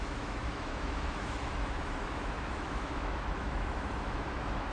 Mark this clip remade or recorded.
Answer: remade